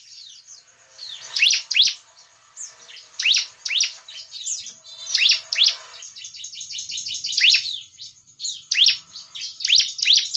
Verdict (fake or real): real